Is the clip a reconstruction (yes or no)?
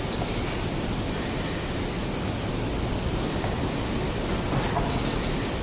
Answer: no